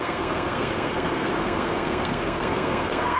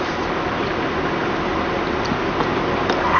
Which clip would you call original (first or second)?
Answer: second